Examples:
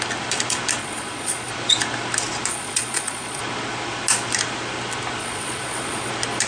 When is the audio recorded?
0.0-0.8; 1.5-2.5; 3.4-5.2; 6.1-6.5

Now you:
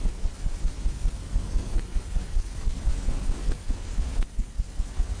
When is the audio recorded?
none

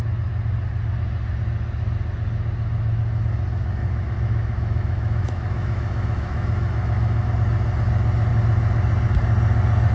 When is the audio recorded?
0.0-3.8; 7.3-9.9

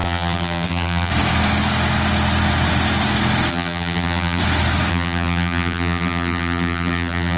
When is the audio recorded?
1.1-3.5; 4.4-4.9

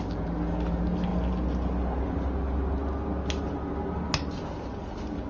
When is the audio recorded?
0.0-5.3